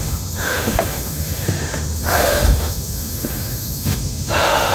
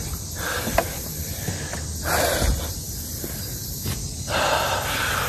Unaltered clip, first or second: second